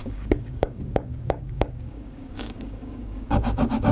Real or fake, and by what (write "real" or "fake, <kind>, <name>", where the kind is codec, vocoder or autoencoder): fake, codec, DAC